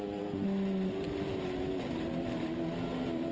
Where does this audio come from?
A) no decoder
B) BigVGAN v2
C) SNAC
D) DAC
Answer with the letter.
A